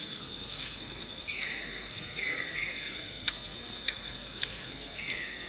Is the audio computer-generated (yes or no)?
yes